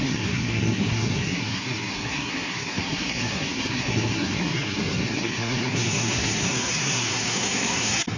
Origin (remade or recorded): remade